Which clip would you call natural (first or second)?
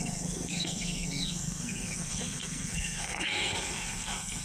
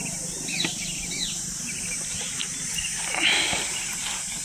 second